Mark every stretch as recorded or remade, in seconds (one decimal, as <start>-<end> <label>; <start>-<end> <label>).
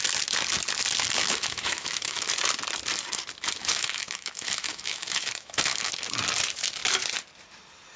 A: 0.0-1.2 recorded; 1.2-2.3 remade; 2.3-3.6 recorded; 3.6-5.9 remade; 5.9-8.0 recorded